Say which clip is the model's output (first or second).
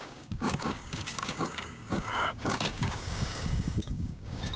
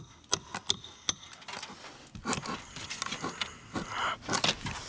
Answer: first